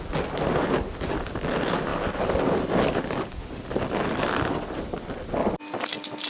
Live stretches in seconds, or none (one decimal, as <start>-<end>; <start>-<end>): 0.0-6.3